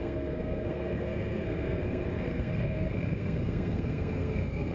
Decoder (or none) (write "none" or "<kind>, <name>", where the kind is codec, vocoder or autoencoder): codec, SNAC